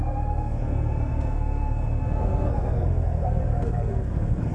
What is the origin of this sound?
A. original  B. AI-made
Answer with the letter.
B